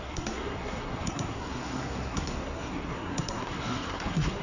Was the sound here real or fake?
fake